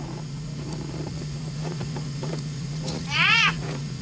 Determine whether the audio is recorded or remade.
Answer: remade